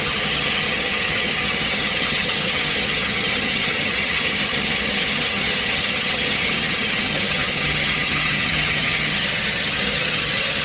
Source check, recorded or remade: remade